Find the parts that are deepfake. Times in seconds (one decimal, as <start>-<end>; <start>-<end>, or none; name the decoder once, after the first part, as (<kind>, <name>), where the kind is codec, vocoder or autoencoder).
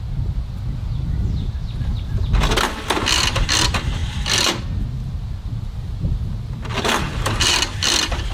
none